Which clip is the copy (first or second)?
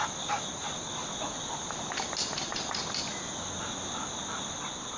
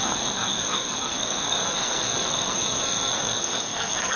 second